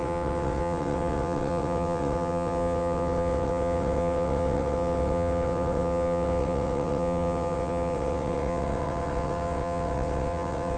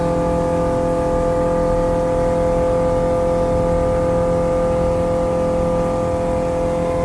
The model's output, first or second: first